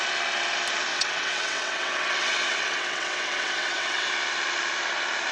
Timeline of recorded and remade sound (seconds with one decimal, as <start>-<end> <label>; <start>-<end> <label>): 0.0-0.9 recorded; 0.9-4.1 remade; 4.1-5.3 recorded